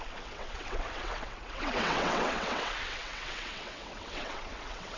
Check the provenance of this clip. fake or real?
fake